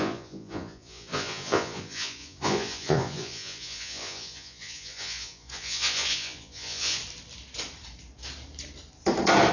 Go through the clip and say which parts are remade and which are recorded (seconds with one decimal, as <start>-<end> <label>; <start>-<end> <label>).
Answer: 0.0-7.0 remade; 7.0-9.5 recorded